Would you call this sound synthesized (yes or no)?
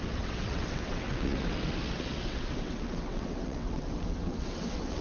yes